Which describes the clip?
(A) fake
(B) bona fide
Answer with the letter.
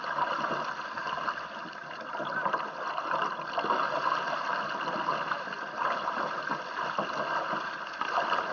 B